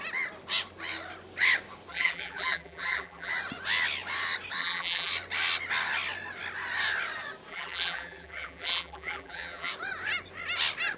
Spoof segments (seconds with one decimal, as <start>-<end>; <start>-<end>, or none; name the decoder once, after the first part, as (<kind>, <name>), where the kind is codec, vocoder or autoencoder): 1.9-3.3 (vocoder, BigVGAN v2); 4.6-5.1; 7.5-9.7